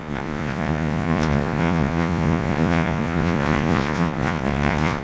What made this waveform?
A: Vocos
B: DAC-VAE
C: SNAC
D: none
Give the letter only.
A